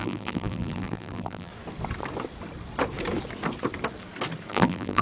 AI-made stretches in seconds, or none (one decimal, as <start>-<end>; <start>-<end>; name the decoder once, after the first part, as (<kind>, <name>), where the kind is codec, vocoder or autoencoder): 0.0-1.5 (vocoder, BigVGAN v2); 4.5-5.0